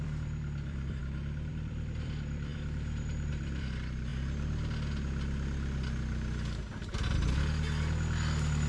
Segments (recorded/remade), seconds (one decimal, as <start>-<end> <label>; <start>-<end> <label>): 0.0-1.0 remade; 1.0-1.5 recorded; 1.5-4.1 remade; 4.1-8.7 recorded